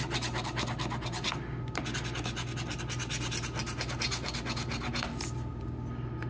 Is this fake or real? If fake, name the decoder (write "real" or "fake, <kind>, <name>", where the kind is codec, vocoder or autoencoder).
real